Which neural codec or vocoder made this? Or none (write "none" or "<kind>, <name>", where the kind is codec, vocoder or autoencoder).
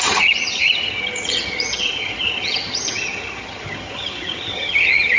vocoder, HiFi-GAN